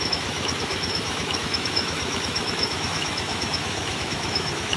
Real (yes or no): no